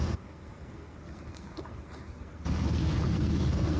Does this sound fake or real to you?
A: fake